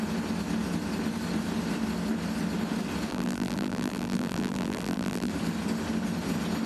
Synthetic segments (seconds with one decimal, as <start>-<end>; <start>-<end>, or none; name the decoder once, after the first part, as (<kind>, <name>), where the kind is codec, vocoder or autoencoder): 3.1-5.3 (vocoder, BigVGAN v2)